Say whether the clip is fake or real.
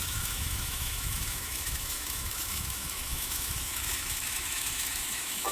fake